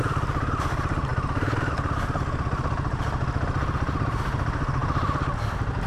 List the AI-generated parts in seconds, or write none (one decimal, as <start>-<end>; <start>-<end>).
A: none